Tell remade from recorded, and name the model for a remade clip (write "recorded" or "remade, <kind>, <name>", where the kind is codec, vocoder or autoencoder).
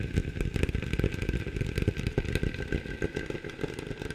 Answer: recorded